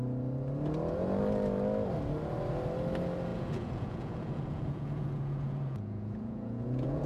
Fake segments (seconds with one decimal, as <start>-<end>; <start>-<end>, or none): 3.3-7.1